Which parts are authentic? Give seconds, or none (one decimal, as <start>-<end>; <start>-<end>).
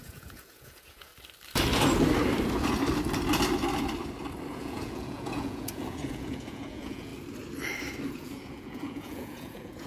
1.1-4.5; 7.1-8.1